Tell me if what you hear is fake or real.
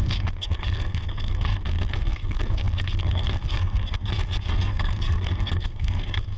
fake